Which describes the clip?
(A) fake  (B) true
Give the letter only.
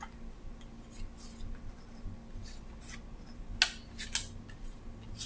B